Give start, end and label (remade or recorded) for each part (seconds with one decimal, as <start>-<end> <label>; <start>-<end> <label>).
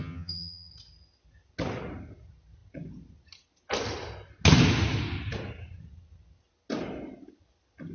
0.0-0.7 remade; 0.7-7.9 recorded